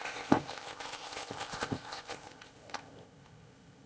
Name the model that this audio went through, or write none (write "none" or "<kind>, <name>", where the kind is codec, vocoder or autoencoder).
codec, ZipCodec